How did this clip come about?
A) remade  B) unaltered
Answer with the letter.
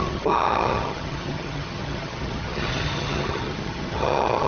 A